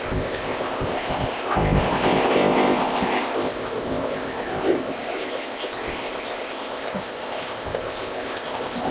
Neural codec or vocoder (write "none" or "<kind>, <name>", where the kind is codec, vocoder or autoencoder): codec, ZipCodec